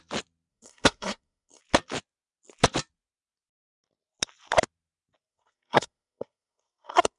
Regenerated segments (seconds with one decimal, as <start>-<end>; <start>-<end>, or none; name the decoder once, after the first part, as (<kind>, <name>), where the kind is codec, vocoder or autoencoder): 0.5-1.6 (codec, SNAC); 5.3-7.2